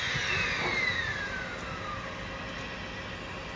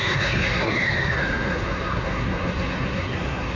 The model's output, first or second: second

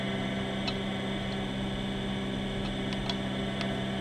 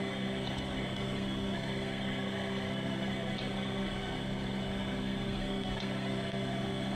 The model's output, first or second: second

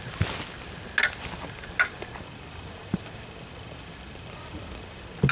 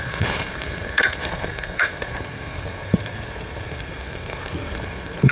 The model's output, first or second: second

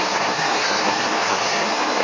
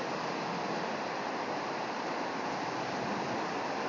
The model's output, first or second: first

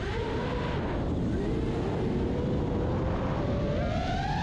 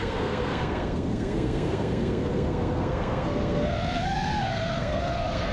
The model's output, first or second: second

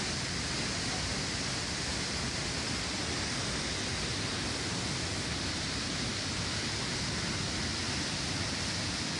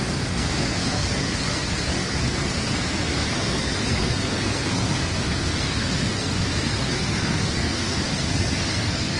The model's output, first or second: second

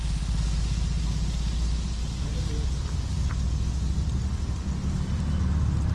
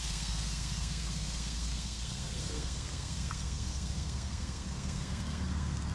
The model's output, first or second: second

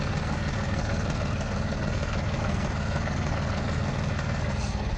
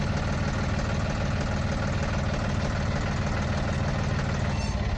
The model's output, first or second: first